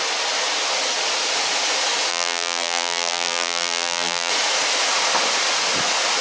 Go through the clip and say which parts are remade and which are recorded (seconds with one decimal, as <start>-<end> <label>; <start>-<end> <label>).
0.0-2.1 recorded; 2.1-4.3 remade; 4.3-6.2 recorded